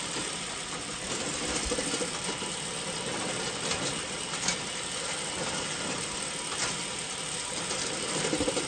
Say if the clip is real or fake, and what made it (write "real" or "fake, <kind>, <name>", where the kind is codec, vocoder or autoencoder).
fake, vocoder, BigVGAN v2